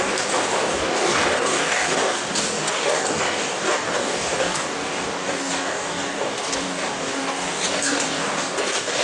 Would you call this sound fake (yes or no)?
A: yes